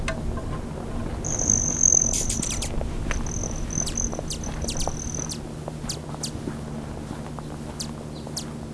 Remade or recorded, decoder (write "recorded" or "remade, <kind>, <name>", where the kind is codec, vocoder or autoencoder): recorded